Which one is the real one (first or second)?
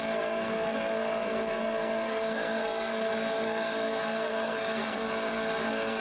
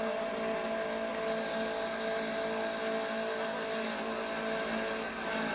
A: second